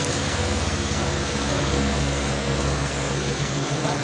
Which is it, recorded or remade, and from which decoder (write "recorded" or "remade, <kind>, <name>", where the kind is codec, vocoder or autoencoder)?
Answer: remade, codec, SNAC